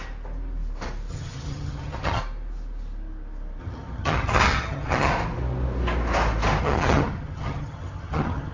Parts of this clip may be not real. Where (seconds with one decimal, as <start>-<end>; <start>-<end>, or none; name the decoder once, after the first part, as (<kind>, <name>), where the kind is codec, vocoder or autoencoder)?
1.1-2.2 (vocoder, HiFi-GAN); 3.6-5.1; 6.6-8.5